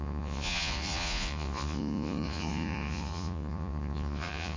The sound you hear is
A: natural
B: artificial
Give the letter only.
B